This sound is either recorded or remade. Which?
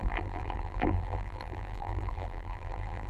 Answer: remade